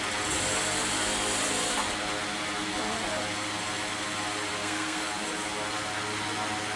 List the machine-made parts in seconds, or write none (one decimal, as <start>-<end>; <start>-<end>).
4.5-5.0